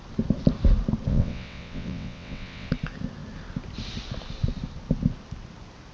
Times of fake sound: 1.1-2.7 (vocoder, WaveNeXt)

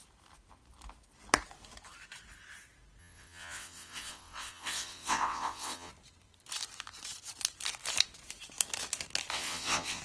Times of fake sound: 3.0-5.9 (vocoder, WaveNeXt); 9.3-10.0

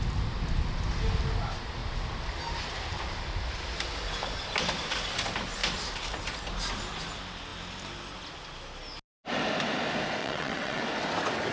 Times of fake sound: 10.2-10.8 (vocoder, WaveNeXt)

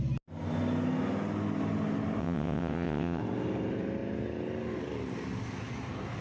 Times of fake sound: 2.2-3.2 (vocoder, WaveNeXt)

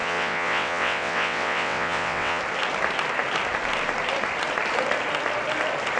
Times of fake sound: 0.0-2.4 (vocoder, WaveNeXt)